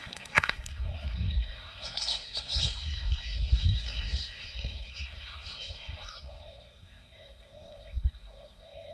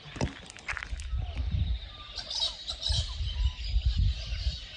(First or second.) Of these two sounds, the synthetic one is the first